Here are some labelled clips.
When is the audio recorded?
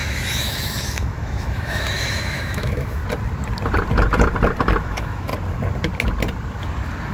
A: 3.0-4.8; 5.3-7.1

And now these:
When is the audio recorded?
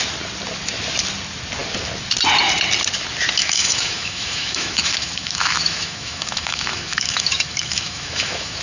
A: 0.0-3.4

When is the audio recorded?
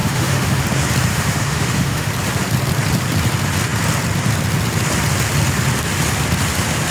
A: 0.6-1.1; 2.1-6.9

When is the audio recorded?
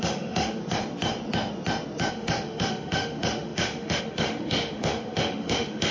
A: 0.6-2.1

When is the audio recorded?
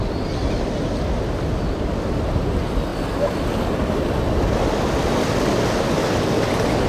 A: 0.0-6.9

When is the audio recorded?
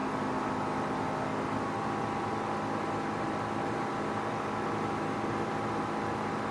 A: 0.0-6.5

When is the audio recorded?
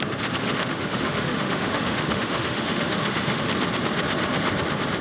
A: 0.0-0.4; 3.4-5.0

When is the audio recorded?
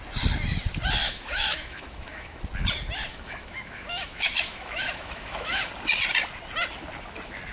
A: 0.0-1.0; 2.4-3.1; 5.7-7.5